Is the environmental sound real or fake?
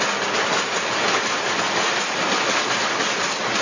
real